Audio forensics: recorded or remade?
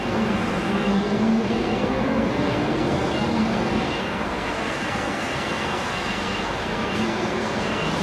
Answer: remade